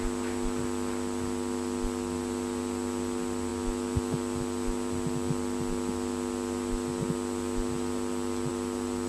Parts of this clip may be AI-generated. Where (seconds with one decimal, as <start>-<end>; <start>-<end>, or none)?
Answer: none